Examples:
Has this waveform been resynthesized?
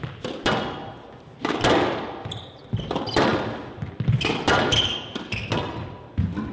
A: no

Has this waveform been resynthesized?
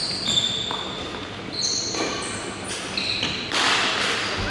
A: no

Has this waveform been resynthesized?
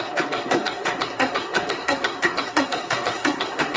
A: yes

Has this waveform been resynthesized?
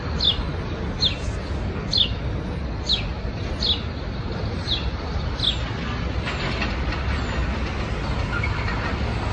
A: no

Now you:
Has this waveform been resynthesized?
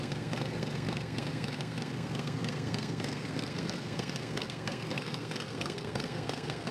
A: yes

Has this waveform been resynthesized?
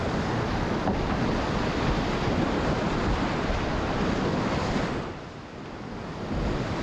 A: no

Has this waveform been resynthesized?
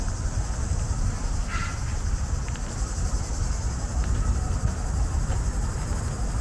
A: no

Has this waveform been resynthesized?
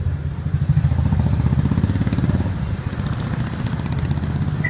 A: no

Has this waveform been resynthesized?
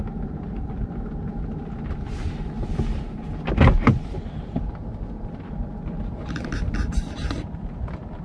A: no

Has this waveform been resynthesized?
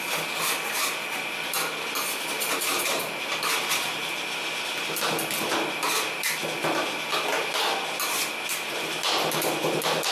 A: no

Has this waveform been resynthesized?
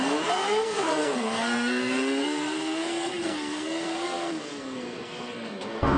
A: yes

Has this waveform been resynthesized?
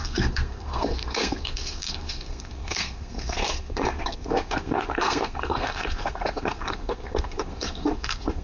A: yes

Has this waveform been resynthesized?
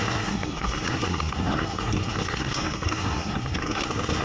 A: yes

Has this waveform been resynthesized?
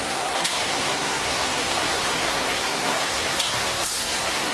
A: yes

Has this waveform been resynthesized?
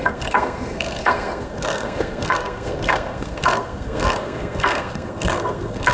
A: yes